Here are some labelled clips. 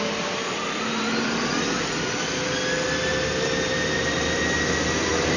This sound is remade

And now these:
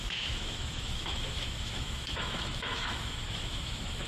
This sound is remade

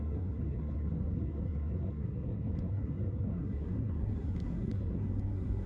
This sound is remade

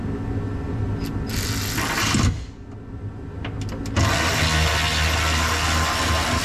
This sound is recorded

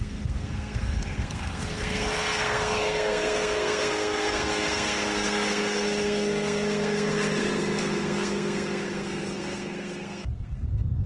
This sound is remade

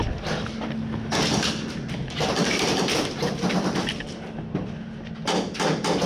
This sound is recorded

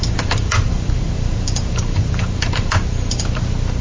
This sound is remade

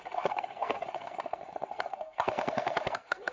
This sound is remade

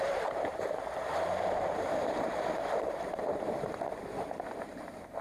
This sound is remade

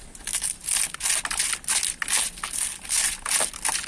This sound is recorded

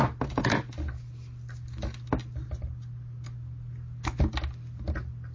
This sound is recorded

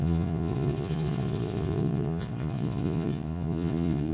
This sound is remade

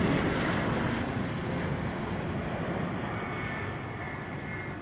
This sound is recorded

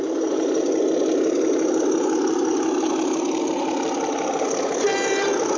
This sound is recorded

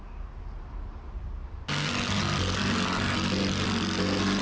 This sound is recorded